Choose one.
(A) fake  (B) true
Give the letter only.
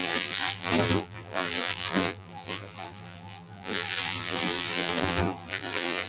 A